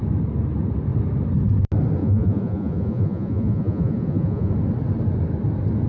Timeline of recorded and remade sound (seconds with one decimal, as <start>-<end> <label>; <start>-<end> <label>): 0.0-2.0 recorded; 2.0-4.5 remade; 4.5-5.9 recorded